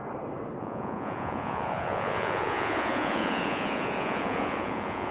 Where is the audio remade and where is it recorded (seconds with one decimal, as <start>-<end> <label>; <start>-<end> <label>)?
0.0-0.6 recorded; 0.6-5.1 remade